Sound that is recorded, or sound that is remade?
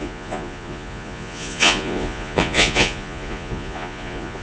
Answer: remade